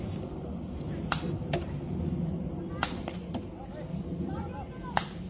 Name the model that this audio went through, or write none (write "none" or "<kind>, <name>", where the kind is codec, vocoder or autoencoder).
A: none